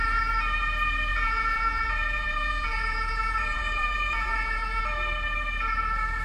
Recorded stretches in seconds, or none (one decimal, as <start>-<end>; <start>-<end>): 0.0-1.1; 4.8-6.2